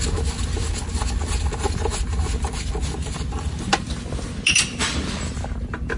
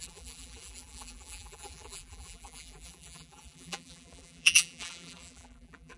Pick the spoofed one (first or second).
second